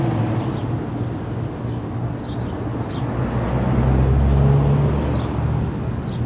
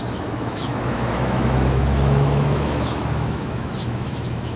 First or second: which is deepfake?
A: second